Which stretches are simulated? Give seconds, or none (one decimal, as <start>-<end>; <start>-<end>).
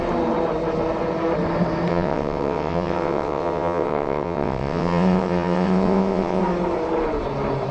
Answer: 1.9-6.4